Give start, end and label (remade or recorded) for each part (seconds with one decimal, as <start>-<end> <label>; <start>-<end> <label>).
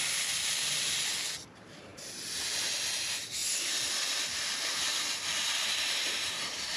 0.0-6.8 recorded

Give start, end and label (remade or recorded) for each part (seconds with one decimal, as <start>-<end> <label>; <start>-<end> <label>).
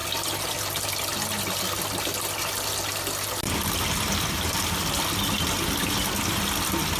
0.0-7.0 recorded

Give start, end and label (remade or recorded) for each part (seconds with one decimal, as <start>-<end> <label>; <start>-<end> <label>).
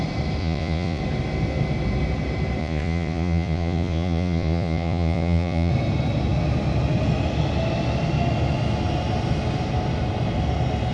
0.0-0.4 recorded; 0.4-1.0 remade; 1.0-2.6 recorded; 2.6-5.7 remade; 5.7-10.9 recorded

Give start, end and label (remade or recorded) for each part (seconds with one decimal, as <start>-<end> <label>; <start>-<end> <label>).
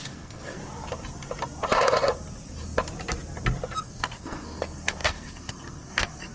0.0-0.6 remade; 0.6-3.8 recorded; 3.8-6.3 remade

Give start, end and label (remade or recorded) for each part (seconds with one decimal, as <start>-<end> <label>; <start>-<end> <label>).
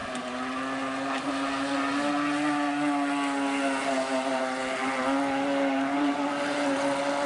0.0-7.3 recorded